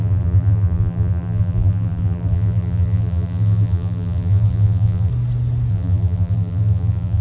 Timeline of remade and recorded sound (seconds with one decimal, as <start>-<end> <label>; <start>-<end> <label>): 0.0-5.1 remade; 5.1-5.7 recorded; 5.7-7.2 remade